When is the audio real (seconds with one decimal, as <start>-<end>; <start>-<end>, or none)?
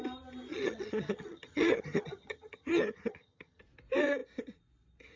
0.0-0.5; 3.6-5.2